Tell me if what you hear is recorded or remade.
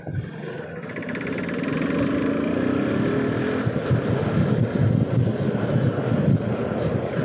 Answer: recorded